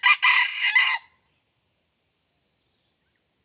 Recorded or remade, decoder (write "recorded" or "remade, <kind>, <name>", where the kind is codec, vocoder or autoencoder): recorded